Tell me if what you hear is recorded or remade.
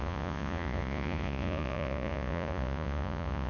remade